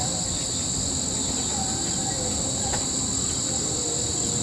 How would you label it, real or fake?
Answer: real